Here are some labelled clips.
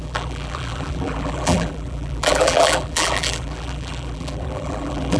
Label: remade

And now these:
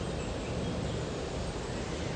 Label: recorded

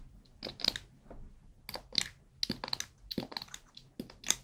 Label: recorded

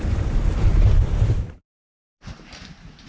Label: remade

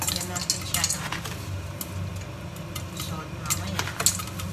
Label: recorded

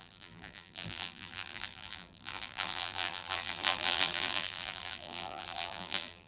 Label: remade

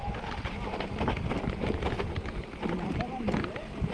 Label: recorded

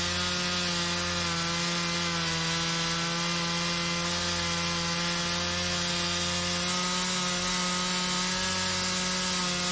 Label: recorded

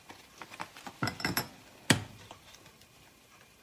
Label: recorded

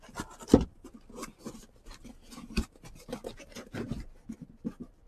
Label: remade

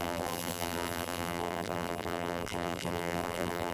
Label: remade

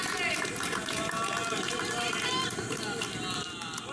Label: recorded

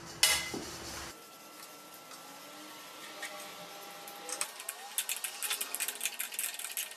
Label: recorded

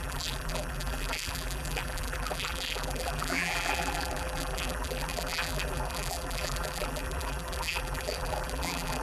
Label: remade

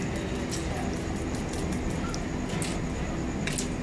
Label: recorded